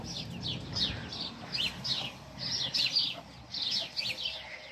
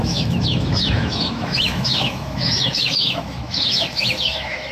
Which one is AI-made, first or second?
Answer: second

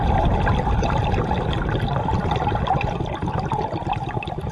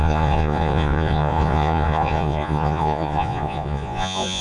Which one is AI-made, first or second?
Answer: second